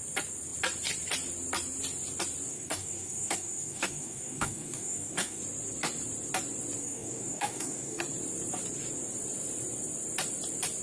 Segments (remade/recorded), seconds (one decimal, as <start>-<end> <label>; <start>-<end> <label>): 0.0-2.5 recorded; 2.5-5.4 remade; 5.4-6.8 recorded; 6.8-8.0 remade; 8.0-10.8 recorded